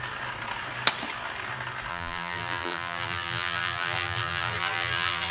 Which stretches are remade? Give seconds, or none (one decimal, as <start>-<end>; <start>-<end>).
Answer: 1.9-5.3

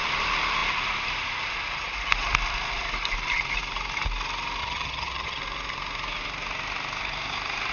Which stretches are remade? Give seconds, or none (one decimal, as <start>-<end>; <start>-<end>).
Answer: 4.6-5.4

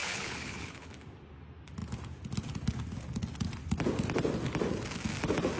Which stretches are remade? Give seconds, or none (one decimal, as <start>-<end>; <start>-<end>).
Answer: 0.0-0.9

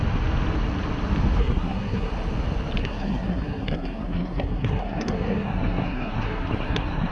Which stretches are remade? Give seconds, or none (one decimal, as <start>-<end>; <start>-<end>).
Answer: 1.4-2.1; 2.8-7.1

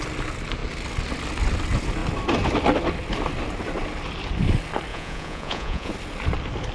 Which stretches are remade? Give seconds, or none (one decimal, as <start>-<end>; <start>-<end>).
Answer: 4.9-5.9

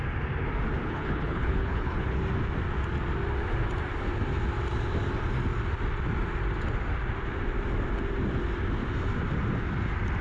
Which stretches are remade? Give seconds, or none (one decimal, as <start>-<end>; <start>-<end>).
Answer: 0.8-2.2

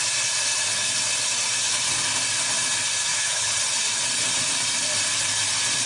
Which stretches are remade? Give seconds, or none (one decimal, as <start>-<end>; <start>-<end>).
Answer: 3.1-3.6